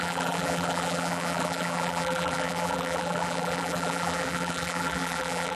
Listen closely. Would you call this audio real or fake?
fake